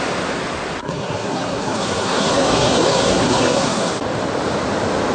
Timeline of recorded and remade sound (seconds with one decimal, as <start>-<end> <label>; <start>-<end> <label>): 0.0-0.8 recorded; 0.8-3.9 remade; 3.9-5.1 recorded